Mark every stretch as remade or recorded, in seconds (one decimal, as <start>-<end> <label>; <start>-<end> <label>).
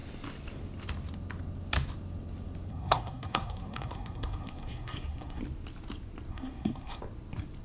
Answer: 0.0-2.7 recorded; 2.7-5.4 remade; 5.4-6.3 recorded; 6.3-7.0 remade; 7.0-7.6 recorded